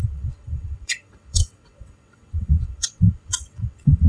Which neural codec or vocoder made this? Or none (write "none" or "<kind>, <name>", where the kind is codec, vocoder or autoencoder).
vocoder, WaveNeXt